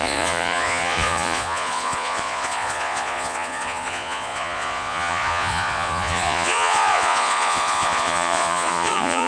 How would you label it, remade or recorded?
remade